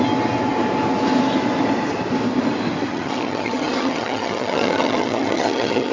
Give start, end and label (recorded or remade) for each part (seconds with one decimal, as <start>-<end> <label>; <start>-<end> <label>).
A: 0.0-2.9 recorded; 2.9-5.9 remade